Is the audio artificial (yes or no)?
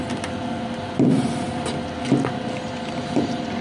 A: no